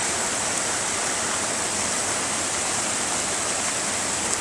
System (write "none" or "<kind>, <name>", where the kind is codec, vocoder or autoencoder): none